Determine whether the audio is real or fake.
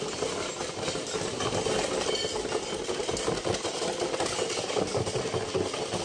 real